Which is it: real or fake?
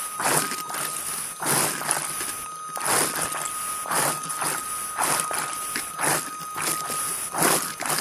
real